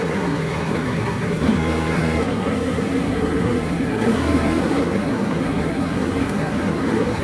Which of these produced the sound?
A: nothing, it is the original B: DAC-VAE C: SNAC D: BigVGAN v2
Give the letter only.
C